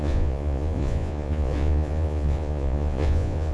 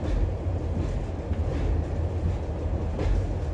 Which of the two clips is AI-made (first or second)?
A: first